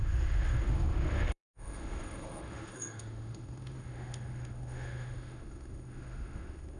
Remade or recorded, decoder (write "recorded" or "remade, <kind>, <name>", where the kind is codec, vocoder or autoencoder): remade, autoencoder, DAC-VAE